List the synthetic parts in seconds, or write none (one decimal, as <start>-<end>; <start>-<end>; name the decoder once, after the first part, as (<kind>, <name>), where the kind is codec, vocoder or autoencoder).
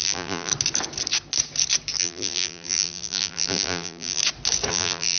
0.0-0.5 (vocoder, BigVGAN v2); 2.0-4.2; 4.7-5.2